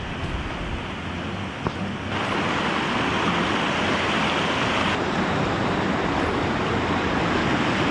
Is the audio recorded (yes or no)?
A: yes